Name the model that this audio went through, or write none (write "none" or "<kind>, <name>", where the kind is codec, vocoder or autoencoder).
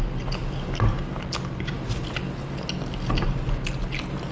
none